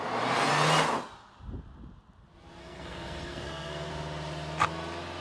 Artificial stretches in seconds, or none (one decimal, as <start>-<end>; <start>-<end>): 2.6-3.9